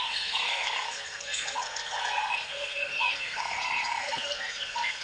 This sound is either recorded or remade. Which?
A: remade